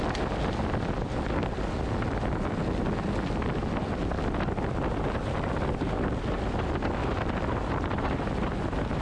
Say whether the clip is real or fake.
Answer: real